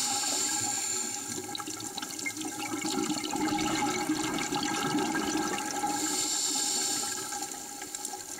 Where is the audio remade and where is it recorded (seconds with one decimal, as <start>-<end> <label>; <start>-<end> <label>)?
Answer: 0.0-8.4 recorded